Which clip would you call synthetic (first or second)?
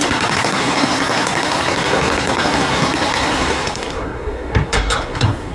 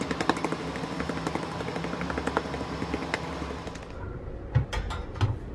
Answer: first